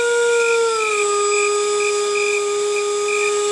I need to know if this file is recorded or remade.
recorded